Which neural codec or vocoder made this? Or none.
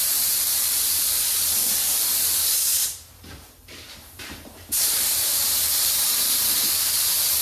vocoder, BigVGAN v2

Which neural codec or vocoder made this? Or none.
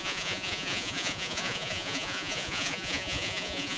vocoder, Vocos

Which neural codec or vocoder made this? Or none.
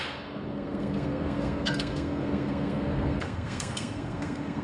codec, SNAC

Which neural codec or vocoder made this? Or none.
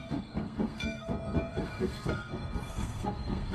codec, SNAC